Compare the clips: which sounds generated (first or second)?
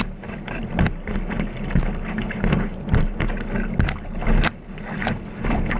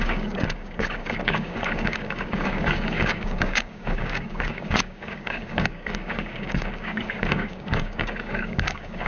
second